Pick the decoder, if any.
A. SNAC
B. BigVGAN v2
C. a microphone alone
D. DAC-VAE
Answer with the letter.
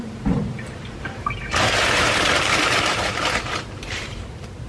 B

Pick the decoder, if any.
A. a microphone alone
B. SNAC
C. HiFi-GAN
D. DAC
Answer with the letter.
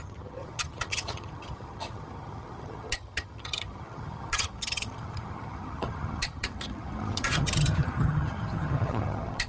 C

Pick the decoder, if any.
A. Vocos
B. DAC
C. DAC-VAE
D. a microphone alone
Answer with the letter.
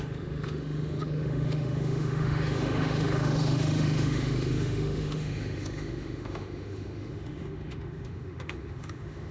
C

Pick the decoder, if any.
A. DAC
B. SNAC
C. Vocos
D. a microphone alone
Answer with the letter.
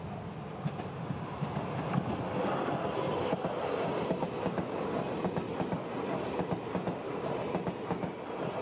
D